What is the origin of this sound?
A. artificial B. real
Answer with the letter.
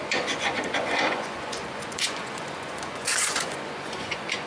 A